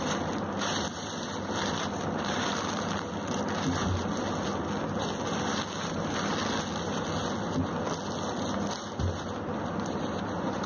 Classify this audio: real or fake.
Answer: real